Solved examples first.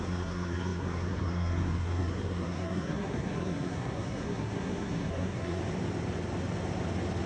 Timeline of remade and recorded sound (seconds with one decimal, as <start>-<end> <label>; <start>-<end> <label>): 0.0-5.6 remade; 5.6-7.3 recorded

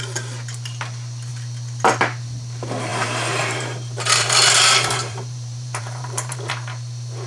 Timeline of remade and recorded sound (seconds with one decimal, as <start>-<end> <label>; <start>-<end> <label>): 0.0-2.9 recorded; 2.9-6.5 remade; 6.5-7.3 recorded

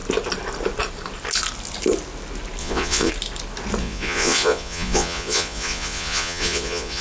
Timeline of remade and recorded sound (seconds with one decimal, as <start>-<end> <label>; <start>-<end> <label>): 0.0-2.6 recorded; 2.6-3.1 remade; 3.1-3.8 recorded; 3.8-7.0 remade

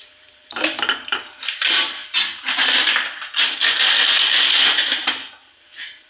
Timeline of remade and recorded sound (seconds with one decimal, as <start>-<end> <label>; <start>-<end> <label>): 0.0-2.0 remade; 2.0-5.4 recorded; 5.4-6.1 remade

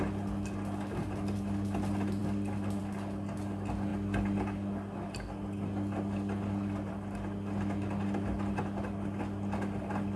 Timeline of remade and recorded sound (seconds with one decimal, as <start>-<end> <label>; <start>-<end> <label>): 0.0-10.2 recorded